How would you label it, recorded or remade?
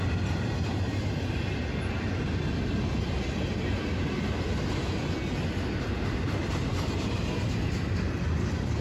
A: recorded